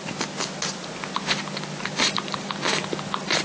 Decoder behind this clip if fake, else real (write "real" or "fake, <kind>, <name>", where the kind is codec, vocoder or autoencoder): real